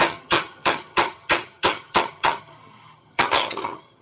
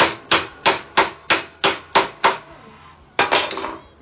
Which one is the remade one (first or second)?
first